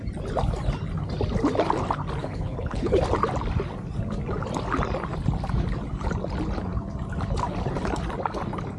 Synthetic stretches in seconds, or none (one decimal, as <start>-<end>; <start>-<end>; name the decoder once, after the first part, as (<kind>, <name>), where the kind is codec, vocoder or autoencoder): 2.2-3.0 (codec, HILCodec)